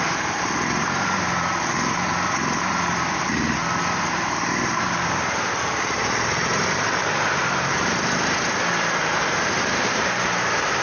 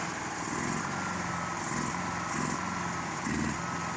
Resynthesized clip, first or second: first